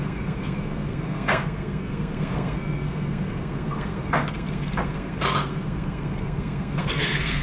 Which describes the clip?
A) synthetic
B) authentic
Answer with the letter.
A